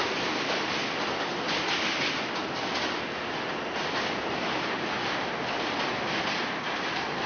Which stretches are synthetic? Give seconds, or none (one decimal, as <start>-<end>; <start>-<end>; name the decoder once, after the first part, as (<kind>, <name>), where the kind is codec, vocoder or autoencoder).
none